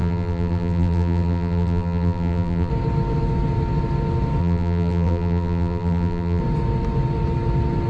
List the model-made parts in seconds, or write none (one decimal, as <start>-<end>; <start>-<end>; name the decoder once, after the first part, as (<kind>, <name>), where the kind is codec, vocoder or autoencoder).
0.0-2.7 (vocoder, BigVGAN v2); 4.4-6.4